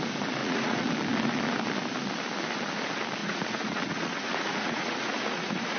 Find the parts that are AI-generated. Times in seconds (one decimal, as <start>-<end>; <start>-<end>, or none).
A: 0.4-0.9; 3.2-5.8